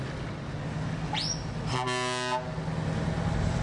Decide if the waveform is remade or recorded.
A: recorded